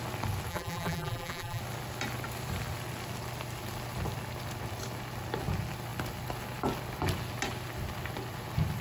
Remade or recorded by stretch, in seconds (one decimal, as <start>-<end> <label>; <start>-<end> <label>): 0.0-0.5 recorded; 0.5-1.6 remade; 1.6-8.8 recorded